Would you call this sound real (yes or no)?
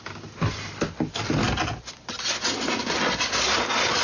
yes